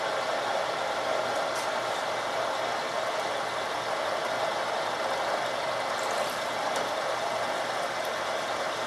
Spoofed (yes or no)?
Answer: no